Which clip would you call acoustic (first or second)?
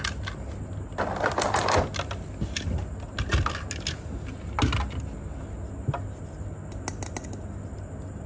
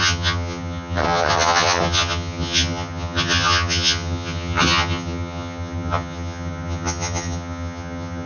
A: first